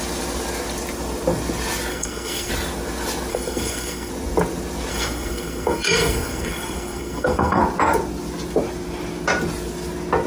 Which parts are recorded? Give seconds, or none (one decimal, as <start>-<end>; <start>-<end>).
0.0-1.9; 2.5-3.3; 4.1-4.9; 7.6-10.3